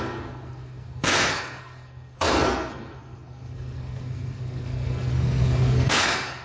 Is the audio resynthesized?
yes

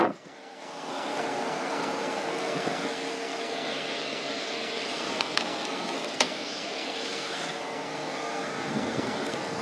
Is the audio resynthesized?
yes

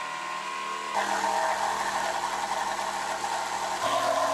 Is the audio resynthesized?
no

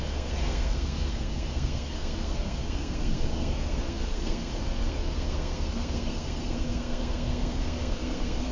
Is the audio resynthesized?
yes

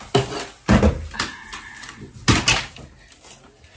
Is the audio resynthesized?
no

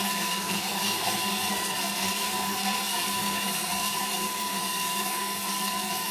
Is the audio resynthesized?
yes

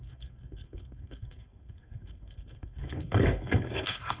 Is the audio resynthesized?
yes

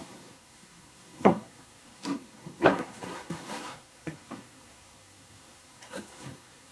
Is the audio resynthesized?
yes